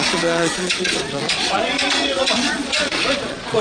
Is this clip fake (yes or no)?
yes